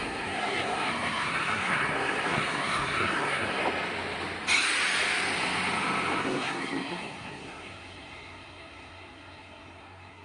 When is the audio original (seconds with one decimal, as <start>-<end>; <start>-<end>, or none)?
3.6-6.2